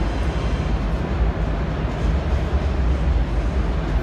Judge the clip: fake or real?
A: real